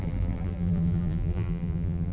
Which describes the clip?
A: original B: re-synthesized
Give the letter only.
B